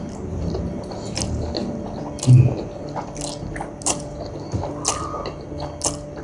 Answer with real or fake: real